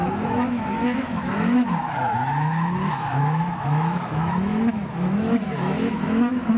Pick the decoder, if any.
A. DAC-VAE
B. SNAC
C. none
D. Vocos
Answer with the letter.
A